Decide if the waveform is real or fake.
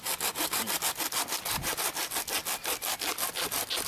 real